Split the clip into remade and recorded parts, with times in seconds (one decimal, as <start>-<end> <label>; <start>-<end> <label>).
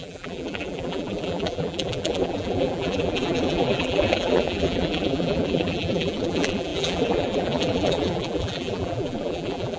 0.0-9.8 remade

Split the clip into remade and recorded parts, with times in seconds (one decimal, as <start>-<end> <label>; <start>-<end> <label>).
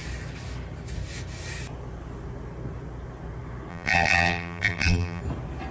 0.0-3.7 recorded; 3.7-5.2 remade; 5.2-5.7 recorded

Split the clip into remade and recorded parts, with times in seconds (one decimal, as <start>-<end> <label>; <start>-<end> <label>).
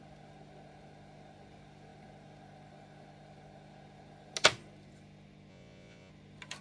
0.0-5.5 recorded; 5.5-6.1 remade; 6.1-6.6 recorded